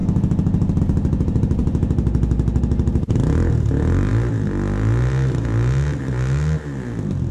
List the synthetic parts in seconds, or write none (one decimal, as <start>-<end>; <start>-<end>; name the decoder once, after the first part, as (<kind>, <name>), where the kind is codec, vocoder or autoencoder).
none